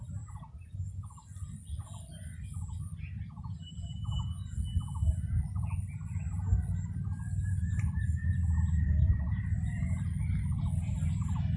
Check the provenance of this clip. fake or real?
real